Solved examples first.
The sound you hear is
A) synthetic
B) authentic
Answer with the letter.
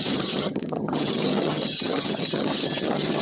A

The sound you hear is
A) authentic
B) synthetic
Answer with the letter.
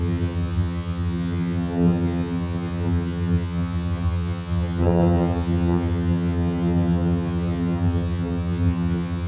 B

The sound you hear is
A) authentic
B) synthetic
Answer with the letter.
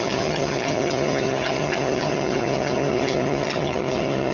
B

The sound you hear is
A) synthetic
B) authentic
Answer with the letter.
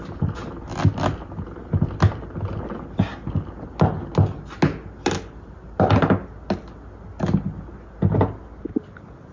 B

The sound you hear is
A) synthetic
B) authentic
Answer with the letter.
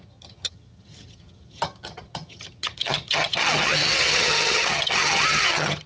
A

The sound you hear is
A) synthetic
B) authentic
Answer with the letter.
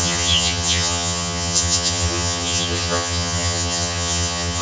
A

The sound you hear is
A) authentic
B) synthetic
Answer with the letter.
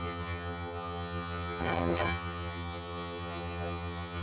B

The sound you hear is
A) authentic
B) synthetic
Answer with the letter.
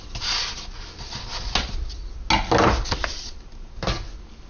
A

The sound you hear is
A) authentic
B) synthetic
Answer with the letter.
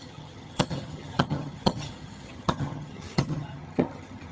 B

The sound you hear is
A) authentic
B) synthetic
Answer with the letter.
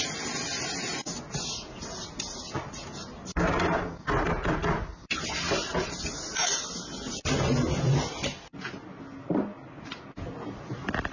A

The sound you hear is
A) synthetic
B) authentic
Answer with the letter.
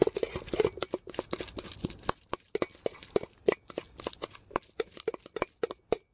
B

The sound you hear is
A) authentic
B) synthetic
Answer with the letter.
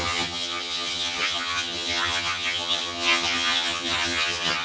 B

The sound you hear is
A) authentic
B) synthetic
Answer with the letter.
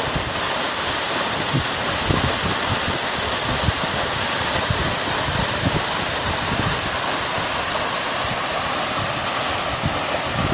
A